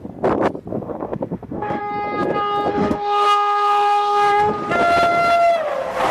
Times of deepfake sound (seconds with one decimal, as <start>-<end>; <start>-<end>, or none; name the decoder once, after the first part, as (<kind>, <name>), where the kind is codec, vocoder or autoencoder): 0.7-1.8 (autoencoder, DAC-VAE); 2.7-4.5